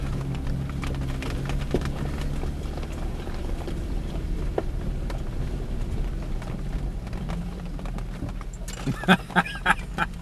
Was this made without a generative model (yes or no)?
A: yes